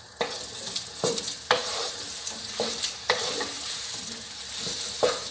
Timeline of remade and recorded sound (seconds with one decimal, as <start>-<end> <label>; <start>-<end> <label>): 0.0-1.6 recorded; 1.6-4.8 remade; 4.8-5.3 recorded

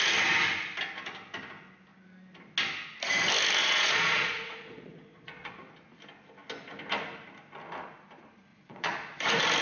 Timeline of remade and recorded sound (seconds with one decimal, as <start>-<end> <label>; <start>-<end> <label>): 0.0-3.6 recorded; 3.6-5.5 remade; 5.5-8.5 recorded; 8.5-9.2 remade; 9.2-9.6 recorded

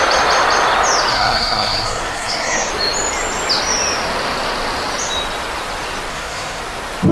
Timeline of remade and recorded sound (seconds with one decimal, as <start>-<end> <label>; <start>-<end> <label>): 0.0-1.1 recorded; 1.1-2.7 remade; 2.7-6.1 recorded; 6.1-6.6 remade; 6.6-7.1 recorded

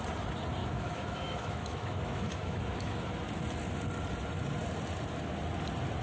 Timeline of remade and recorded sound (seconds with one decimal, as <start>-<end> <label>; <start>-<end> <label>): 0.0-0.6 recorded; 0.6-3.0 remade; 3.0-6.0 recorded